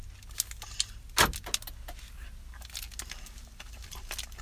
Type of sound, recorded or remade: recorded